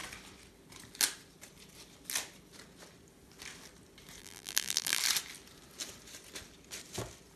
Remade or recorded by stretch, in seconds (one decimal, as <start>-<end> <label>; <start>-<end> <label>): 0.0-4.2 recorded; 4.2-5.0 remade; 5.0-7.4 recorded